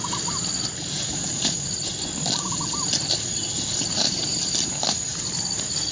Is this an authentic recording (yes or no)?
yes